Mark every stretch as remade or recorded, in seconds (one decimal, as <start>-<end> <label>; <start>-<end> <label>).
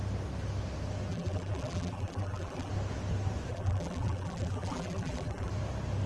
0.0-1.1 recorded; 1.1-2.7 remade; 2.7-3.5 recorded; 3.5-5.5 remade; 5.5-6.1 recorded